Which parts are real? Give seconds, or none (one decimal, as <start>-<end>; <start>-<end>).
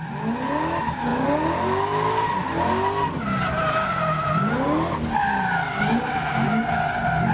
0.0-7.3